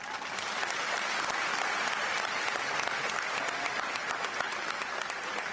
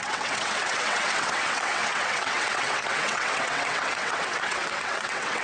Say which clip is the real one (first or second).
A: first